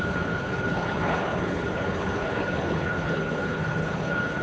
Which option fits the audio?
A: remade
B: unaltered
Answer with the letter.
A